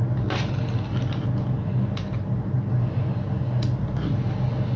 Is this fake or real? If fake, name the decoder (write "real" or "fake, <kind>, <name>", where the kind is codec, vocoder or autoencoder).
real